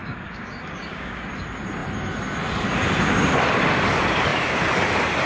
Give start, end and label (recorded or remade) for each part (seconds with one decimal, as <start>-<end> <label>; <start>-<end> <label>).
0.0-1.3 remade; 1.3-5.3 recorded